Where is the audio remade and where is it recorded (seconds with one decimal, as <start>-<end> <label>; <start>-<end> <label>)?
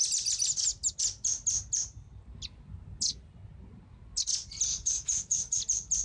0.0-4.7 recorded; 4.7-5.6 remade; 5.6-6.0 recorded